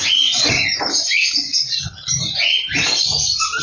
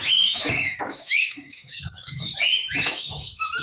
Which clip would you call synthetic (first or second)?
second